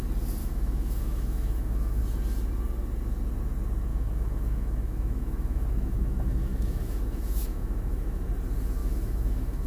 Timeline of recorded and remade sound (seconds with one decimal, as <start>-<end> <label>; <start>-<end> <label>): 0.0-0.4 recorded; 0.4-2.0 remade; 2.0-3.9 recorded; 3.9-8.3 remade; 8.3-8.8 recorded; 8.8-9.7 remade